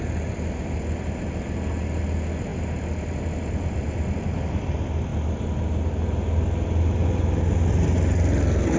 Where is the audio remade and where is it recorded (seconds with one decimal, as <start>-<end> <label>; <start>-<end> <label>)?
0.0-8.8 recorded